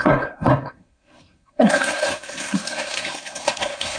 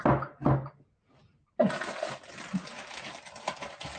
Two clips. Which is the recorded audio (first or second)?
second